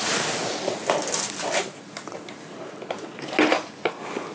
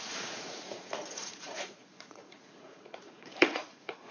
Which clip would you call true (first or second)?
first